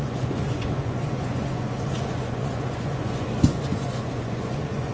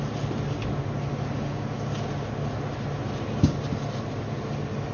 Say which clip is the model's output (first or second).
first